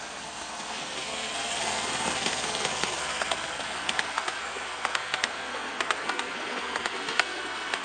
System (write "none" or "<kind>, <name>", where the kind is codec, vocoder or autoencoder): codec, SNAC